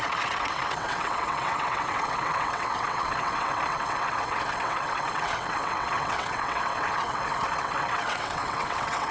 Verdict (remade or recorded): remade